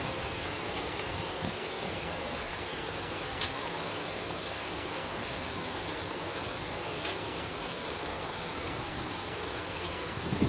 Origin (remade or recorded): remade